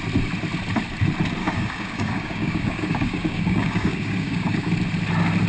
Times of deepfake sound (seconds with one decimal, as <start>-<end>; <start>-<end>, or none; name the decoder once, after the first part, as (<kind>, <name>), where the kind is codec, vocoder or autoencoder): 1.4-4.7 (codec, DAC)